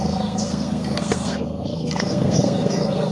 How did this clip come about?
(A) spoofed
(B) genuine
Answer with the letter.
A